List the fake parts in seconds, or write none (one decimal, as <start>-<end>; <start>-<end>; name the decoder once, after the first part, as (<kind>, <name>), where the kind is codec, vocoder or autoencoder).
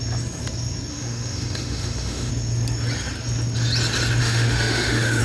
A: 0.9-2.3 (autoencoder, DAC-VAE); 4.2-5.2